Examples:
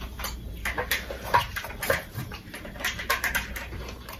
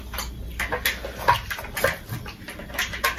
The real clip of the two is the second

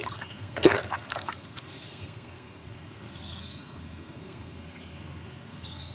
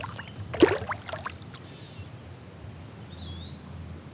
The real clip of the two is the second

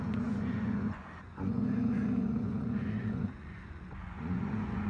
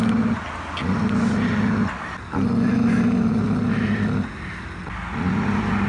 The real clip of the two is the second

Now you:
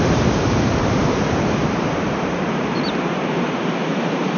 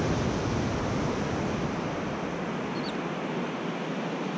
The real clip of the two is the second